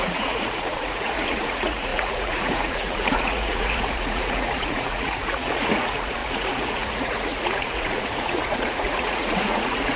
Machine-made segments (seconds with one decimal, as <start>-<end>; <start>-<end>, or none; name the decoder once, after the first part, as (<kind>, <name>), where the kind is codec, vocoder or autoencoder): 0.0-10.0 (vocoder, Vocos)